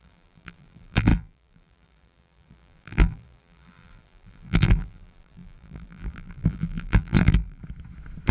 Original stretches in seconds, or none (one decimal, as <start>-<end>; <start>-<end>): 7.6-8.3